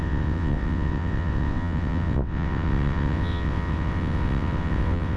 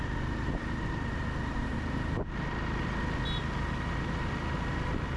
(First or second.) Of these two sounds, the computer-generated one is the first